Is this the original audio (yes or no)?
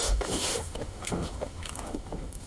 no